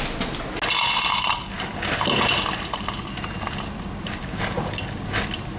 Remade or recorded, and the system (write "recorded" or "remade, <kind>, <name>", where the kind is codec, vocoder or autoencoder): recorded